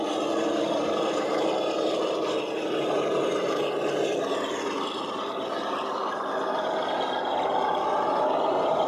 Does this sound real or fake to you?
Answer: real